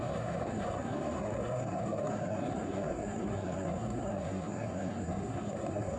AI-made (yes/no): yes